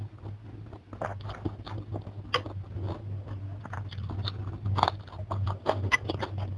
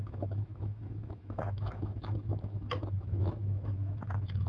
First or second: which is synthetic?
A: second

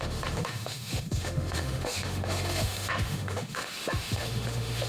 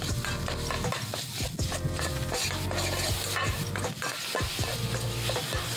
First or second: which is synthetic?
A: first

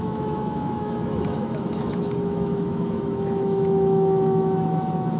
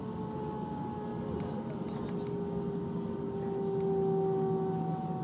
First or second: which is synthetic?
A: first